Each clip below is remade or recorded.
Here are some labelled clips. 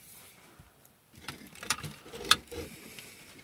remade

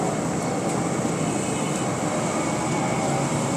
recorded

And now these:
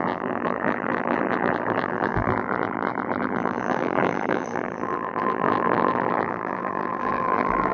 remade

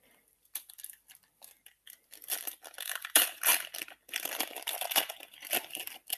remade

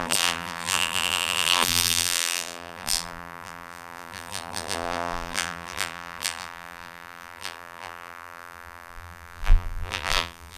remade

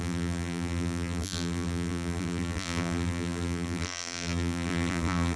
remade